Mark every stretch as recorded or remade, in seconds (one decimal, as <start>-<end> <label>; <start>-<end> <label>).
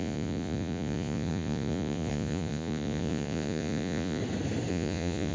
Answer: 0.0-4.2 remade; 4.2-4.7 recorded; 4.7-5.3 remade